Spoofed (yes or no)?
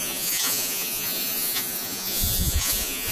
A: yes